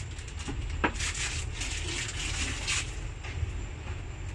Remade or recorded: recorded